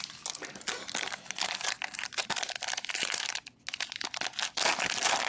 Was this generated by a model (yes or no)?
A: no